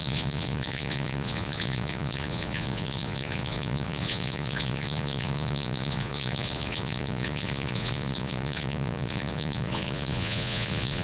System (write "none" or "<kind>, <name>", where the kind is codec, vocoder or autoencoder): vocoder, Vocos